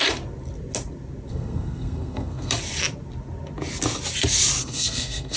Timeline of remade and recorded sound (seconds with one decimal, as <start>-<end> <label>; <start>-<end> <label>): 0.0-1.3 recorded; 1.3-2.5 remade; 2.5-4.6 recorded; 4.6-5.4 remade